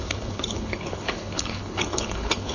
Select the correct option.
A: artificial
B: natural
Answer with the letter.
A